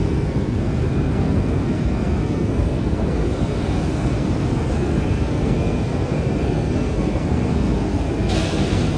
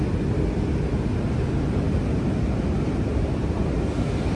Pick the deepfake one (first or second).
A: first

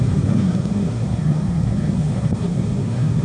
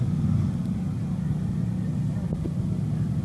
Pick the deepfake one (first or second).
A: first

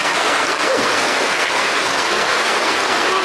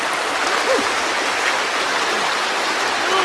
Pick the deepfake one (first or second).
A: first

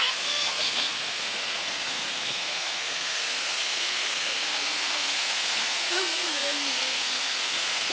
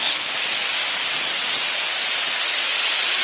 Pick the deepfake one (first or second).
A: first